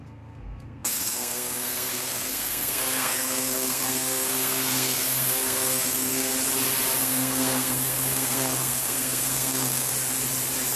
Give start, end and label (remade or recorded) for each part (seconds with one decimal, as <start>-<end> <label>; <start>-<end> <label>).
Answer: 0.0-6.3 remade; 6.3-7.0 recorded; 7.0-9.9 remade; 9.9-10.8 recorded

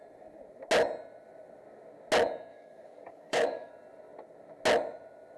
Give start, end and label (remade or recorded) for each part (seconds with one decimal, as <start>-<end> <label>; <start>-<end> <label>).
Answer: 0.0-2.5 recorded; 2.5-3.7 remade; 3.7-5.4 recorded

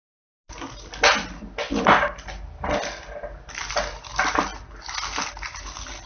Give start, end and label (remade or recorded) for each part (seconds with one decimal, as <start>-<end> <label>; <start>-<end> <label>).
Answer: 0.0-6.1 recorded